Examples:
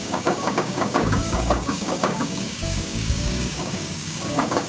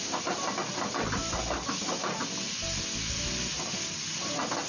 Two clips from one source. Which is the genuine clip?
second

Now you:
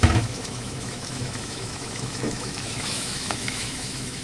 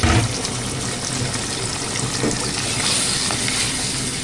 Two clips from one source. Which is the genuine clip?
second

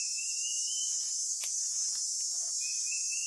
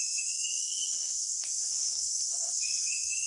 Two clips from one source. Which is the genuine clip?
first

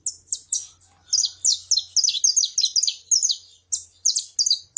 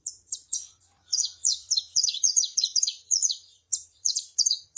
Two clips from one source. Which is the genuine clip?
first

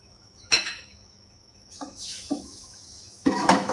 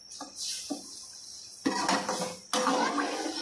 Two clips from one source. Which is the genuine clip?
second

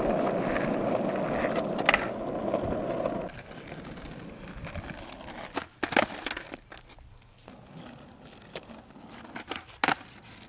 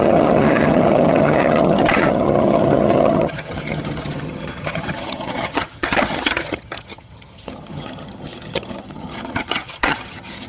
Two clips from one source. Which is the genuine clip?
first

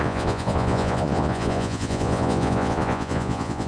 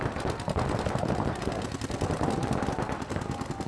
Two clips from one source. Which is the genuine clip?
second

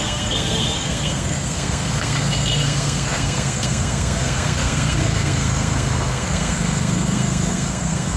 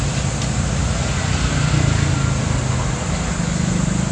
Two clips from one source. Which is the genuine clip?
second